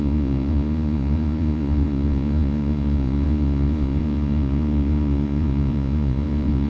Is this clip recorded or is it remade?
remade